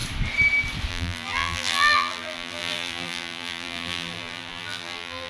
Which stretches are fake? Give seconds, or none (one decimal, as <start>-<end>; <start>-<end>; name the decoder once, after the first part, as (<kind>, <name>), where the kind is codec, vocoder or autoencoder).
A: 0.9-5.3 (vocoder, BigVGAN v2)